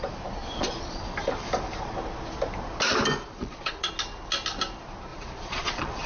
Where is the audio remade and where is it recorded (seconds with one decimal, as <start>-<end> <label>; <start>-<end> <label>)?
0.0-0.4 recorded; 0.4-1.0 remade; 1.0-3.4 recorded; 3.4-3.9 remade; 3.9-5.1 recorded; 5.1-6.1 remade